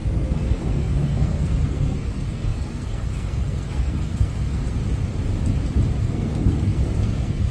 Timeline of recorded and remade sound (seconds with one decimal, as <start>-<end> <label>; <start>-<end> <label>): 0.0-4.8 remade; 4.8-6.0 recorded; 6.0-7.5 remade